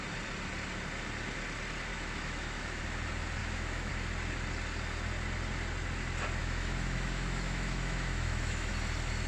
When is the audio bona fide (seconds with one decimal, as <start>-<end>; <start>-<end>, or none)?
0.0-1.9; 2.8-3.4; 3.9-6.4; 8.7-9.3